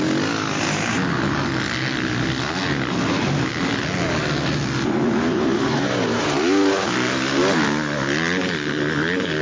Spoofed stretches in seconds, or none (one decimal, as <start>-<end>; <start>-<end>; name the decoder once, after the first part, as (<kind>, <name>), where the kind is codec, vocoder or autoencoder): none